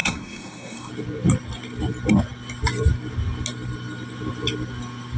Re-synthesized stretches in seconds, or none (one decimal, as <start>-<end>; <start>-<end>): 0.0-0.9